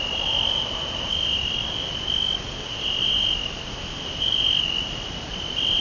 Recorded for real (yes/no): yes